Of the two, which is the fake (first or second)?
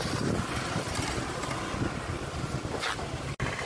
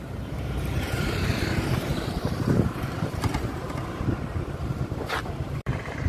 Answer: second